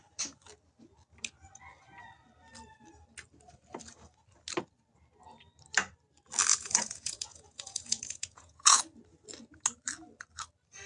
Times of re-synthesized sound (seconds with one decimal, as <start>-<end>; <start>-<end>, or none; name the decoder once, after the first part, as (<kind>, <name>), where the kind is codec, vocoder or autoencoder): 6.5-8.8 (vocoder, Vocos)